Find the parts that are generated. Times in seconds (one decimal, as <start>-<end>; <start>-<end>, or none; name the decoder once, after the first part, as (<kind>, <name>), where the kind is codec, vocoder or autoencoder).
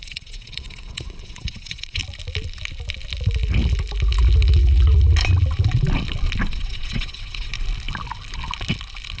0.0-2.0 (vocoder, WaveNeXt); 6.5-7.5